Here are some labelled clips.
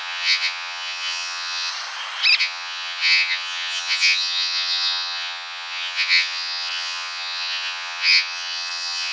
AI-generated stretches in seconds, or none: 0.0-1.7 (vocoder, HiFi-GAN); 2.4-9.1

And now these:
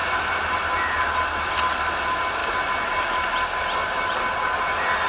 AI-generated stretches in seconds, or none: none

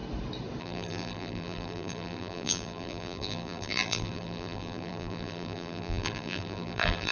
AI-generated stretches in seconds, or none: 0.6-7.1 (vocoder, BigVGAN v2)